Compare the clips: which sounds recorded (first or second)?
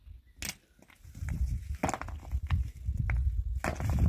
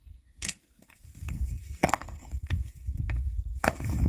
first